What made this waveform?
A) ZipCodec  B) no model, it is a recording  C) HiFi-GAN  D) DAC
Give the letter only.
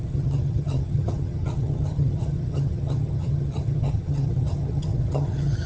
C